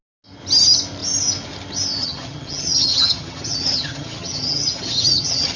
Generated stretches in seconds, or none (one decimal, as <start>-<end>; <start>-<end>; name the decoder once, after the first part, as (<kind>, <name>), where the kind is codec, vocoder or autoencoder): 2.0-5.6 (vocoder, HiFi-GAN)

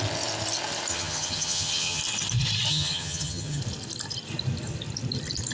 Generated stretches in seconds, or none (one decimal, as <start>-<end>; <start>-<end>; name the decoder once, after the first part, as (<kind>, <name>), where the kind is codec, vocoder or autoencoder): 0.9-2.0 (vocoder, HiFi-GAN); 2.7-3.6

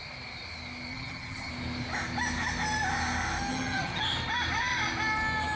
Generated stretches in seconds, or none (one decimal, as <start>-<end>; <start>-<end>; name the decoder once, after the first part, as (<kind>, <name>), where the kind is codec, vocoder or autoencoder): 0.9-1.5 (vocoder, HiFi-GAN); 3.5-4.0

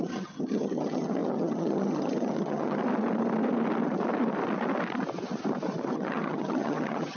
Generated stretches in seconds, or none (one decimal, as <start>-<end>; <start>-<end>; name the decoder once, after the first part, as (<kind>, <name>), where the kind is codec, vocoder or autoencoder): 0.0-2.8 (vocoder, HiFi-GAN); 5.9-7.2

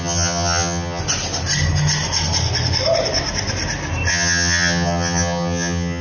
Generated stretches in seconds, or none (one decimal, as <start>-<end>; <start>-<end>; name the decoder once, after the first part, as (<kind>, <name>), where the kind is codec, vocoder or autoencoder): 0.0-1.0 (vocoder, HiFi-GAN); 4.1-6.0